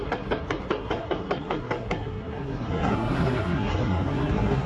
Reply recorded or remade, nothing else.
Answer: remade